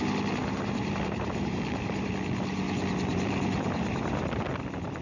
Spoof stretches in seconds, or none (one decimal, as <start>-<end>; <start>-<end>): 0.4-2.1; 3.1-4.5